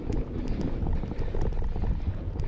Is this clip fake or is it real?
real